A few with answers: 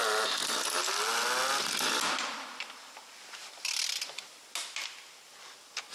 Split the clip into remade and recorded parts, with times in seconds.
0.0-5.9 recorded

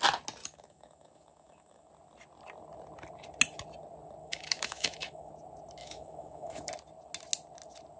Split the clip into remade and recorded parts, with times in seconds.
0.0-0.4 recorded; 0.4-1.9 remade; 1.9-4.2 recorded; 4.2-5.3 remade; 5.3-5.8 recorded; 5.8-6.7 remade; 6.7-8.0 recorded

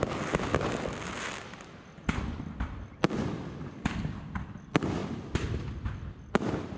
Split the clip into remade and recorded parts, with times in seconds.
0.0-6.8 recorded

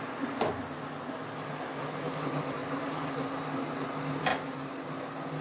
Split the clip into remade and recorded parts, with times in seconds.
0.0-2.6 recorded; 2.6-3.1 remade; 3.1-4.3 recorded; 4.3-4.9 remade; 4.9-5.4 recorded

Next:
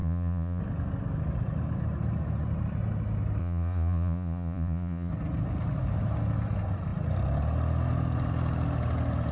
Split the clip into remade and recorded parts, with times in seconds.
0.0-0.6 remade; 0.6-3.4 recorded; 3.4-5.1 remade; 5.1-9.3 recorded

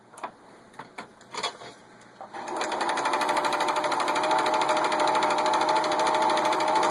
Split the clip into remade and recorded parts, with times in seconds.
0.0-6.9 recorded

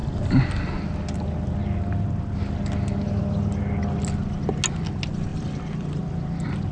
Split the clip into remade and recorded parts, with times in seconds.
0.0-5.3 recorded; 5.3-6.0 remade; 6.0-6.7 recorded